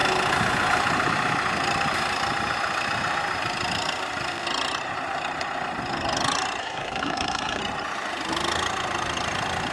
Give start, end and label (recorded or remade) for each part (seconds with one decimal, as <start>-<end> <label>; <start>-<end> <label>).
0.0-6.6 recorded; 6.6-7.6 remade; 7.6-9.7 recorded